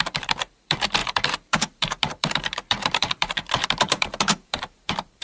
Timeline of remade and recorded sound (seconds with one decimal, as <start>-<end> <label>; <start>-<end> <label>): 0.0-5.2 remade